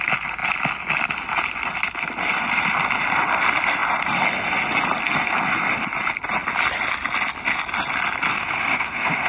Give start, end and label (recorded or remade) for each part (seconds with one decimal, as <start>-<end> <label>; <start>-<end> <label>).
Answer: 0.0-8.3 recorded; 8.3-9.3 remade